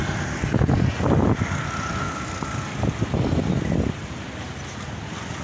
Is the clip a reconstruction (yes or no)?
no